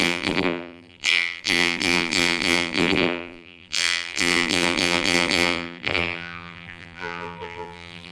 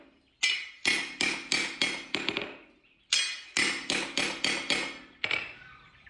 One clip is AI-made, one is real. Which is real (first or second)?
second